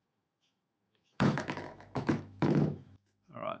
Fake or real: fake